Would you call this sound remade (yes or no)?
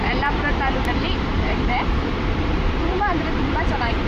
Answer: yes